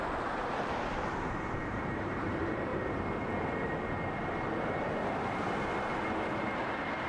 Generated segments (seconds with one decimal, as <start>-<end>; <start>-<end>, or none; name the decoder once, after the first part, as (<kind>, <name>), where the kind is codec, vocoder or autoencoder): 0.0-2.7 (vocoder, BigVGAN v2); 5.3-5.7